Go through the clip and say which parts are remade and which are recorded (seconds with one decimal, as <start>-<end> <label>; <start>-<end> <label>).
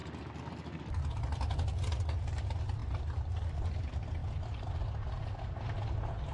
0.0-1.2 remade; 1.2-2.8 recorded; 2.8-3.5 remade; 3.5-6.3 recorded